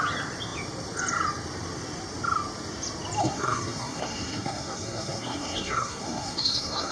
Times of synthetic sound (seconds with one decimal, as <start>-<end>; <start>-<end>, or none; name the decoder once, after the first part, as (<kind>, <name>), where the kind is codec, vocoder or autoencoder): 3.2-6.9 (codec, SNAC)